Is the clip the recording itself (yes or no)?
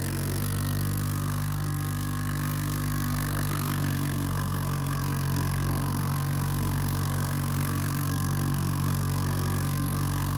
no